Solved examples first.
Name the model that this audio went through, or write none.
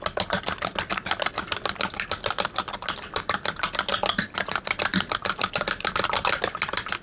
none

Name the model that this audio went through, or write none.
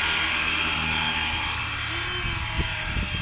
none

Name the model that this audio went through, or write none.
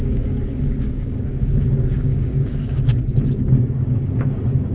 codec, DAC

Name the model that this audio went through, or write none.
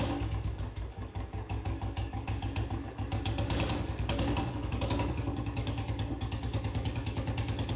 codec, DAC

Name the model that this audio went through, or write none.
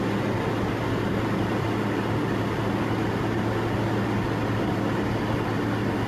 none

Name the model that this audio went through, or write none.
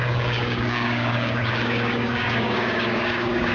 codec, DAC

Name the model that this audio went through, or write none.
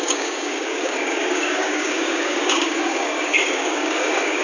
codec, DAC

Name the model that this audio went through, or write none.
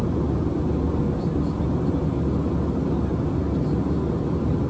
none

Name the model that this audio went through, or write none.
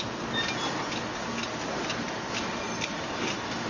none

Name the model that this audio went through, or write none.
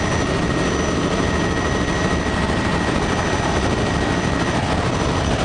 none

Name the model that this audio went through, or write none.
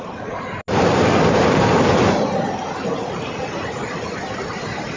none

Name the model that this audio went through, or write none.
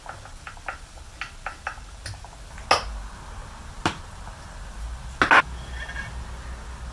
none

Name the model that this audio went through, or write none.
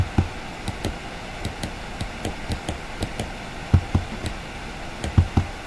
none